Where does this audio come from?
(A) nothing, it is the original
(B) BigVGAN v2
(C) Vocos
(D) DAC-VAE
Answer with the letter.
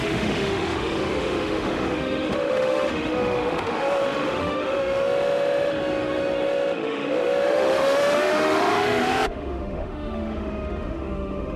D